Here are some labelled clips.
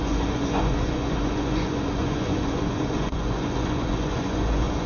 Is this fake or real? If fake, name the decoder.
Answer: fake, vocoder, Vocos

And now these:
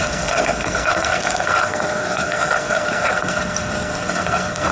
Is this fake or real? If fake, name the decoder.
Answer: fake, codec, SNAC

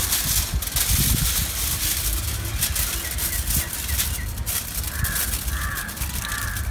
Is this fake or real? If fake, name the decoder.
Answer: real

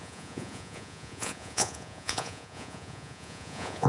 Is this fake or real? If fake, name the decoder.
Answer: fake, vocoder, Vocos